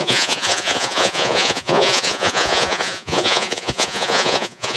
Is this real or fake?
fake